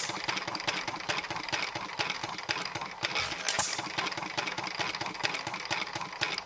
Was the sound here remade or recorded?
recorded